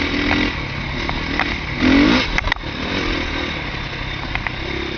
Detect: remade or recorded recorded